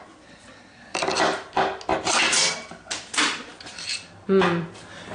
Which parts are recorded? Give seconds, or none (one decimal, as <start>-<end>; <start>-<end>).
0.0-5.1